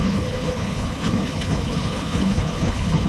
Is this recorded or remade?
remade